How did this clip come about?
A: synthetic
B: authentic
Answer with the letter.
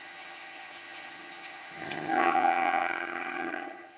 A